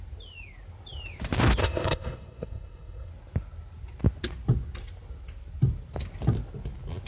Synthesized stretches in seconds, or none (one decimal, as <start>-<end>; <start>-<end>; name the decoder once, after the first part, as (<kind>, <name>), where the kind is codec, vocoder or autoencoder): 1.6-3.1 (codec, SNAC)